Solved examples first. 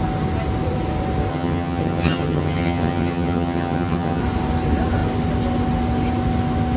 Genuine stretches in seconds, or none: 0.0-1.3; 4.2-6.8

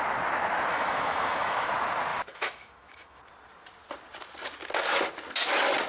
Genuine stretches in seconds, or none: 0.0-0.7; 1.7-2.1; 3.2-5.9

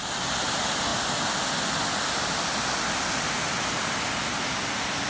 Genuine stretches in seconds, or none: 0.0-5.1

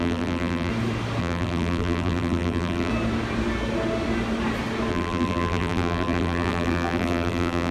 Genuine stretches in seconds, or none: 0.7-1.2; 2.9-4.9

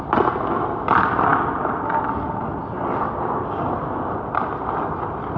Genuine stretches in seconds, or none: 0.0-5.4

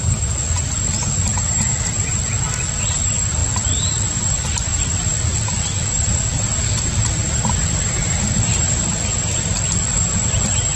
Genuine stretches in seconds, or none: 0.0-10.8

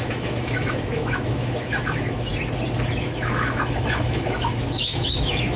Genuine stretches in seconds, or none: 2.3-3.0